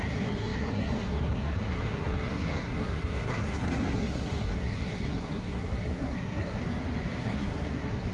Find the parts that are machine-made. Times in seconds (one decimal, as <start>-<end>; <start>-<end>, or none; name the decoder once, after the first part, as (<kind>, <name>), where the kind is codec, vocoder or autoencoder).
0.0-6.6 (codec, SNAC); 7.2-8.1